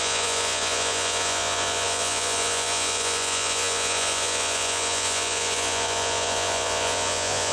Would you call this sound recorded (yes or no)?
no